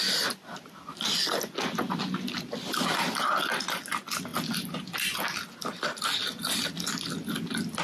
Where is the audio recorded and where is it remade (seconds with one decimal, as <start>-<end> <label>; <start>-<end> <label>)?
0.0-7.8 recorded

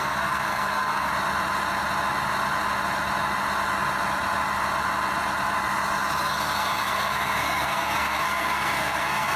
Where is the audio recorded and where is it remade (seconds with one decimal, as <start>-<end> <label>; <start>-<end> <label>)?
0.0-1.1 remade; 1.1-6.2 recorded; 6.2-9.4 remade

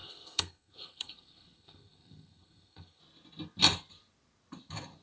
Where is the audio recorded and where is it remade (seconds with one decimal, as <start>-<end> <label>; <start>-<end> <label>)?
0.0-3.0 remade; 3.0-5.0 recorded

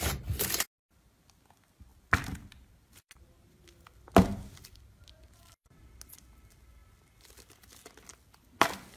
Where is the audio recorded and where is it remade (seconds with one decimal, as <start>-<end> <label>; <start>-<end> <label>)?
0.0-9.0 recorded

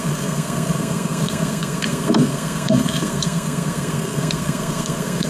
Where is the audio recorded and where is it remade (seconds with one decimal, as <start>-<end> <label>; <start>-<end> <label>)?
0.0-5.3 remade

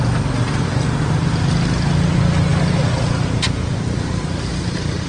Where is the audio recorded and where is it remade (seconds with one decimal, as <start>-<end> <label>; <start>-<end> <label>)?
0.0-5.1 recorded

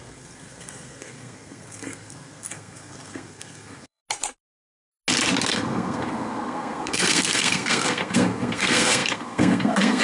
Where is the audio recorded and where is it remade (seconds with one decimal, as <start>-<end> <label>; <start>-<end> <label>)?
0.0-4.0 remade; 4.0-5.5 recorded; 5.5-10.0 remade

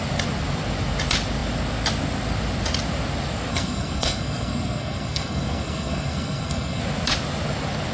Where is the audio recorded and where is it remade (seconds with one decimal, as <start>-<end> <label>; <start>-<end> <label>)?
0.0-3.5 recorded; 3.5-6.8 remade; 6.8-7.9 recorded